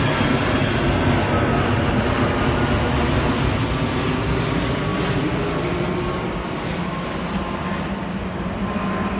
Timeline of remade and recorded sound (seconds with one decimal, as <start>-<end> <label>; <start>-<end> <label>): 0.0-9.2 recorded

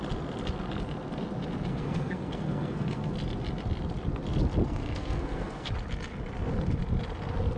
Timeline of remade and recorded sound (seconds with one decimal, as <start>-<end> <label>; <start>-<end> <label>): 0.0-1.7 recorded; 1.7-3.1 remade; 3.1-4.6 recorded; 4.6-5.7 remade; 5.7-7.6 recorded

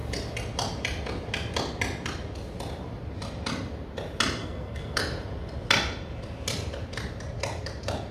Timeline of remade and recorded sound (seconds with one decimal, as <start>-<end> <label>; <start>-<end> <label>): 0.0-4.4 recorded; 4.4-5.0 remade; 5.0-8.1 recorded